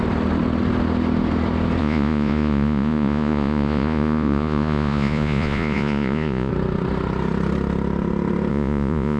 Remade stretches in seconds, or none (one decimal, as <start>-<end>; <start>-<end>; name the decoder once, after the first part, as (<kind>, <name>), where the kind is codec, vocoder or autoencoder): 1.8-6.5 (vocoder, Vocos); 8.5-9.2